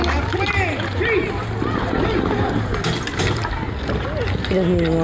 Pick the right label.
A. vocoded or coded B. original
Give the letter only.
B